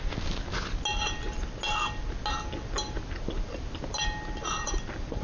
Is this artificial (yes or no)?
no